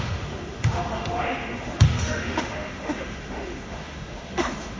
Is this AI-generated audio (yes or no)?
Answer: yes